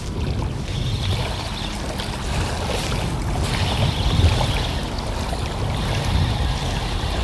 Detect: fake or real real